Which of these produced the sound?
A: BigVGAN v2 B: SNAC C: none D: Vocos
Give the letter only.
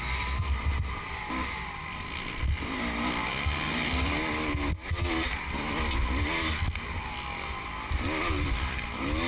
C